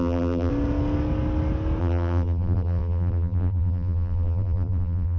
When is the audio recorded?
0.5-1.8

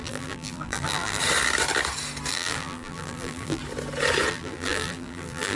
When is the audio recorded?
1.2-2.3; 3.6-4.3

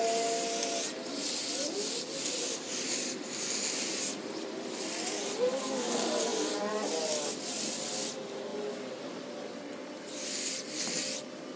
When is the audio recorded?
0.0-6.3; 8.1-8.5; 9.6-11.6